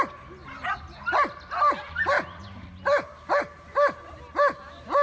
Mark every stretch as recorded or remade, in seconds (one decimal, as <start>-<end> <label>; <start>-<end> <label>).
0.0-5.0 recorded